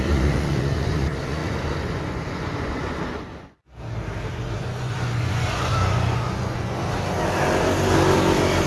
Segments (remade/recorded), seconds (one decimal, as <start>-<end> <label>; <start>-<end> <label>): 0.0-3.6 remade; 3.6-4.3 recorded; 4.3-6.8 remade; 6.8-8.7 recorded